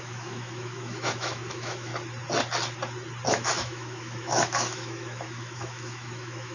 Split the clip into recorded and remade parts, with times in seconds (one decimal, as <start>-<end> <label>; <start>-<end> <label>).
0.0-1.9 remade; 1.9-3.3 recorded; 3.3-6.5 remade